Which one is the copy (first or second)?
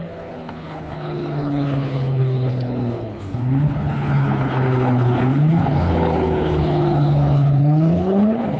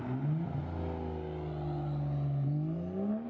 first